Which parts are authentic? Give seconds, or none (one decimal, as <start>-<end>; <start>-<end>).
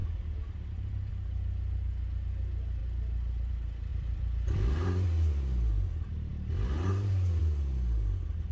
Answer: 0.0-2.8; 3.5-3.9; 4.7-8.5